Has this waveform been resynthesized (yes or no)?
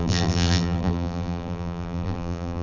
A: yes